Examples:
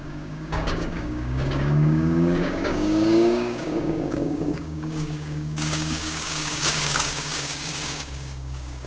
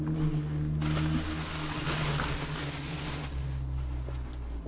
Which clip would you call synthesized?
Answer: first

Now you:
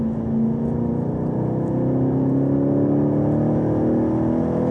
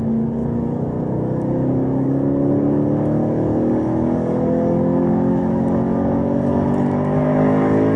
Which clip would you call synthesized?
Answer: second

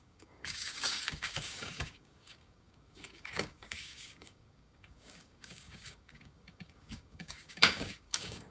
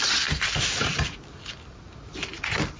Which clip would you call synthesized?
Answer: first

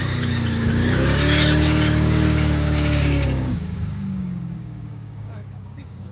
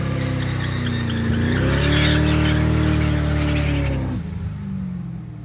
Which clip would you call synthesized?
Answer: first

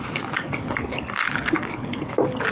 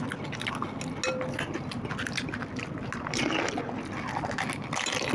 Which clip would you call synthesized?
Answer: first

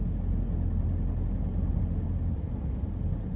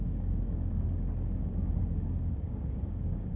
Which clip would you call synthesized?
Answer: second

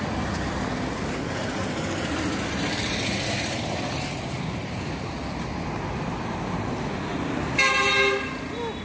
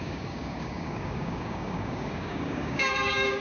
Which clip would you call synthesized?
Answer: second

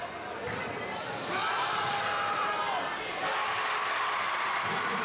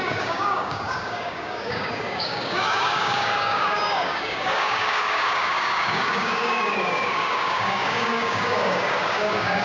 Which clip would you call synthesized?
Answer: second